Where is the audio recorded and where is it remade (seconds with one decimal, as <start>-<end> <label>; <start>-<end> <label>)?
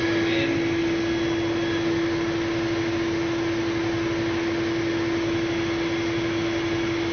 0.0-7.1 recorded